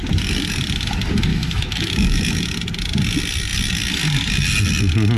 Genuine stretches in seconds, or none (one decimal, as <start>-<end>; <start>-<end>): 0.0-1.3; 2.2-5.2